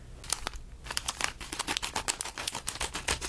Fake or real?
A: real